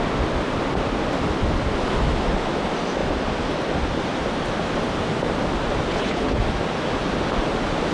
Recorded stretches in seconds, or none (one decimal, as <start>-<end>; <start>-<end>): 0.0-5.9; 6.4-7.9